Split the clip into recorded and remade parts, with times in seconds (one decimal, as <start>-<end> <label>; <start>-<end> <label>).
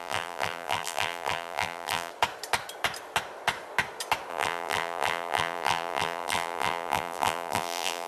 0.0-2.1 remade; 2.1-4.3 recorded; 4.3-8.1 remade